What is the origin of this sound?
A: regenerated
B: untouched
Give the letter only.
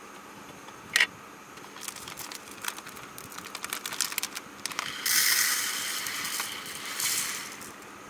B